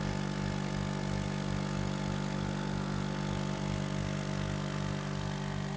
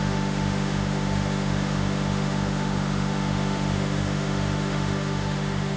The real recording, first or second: first